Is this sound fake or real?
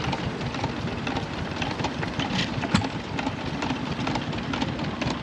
real